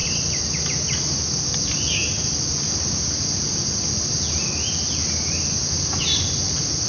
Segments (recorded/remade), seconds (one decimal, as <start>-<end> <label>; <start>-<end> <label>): 0.0-6.9 recorded